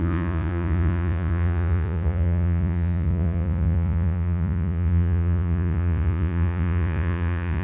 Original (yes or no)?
no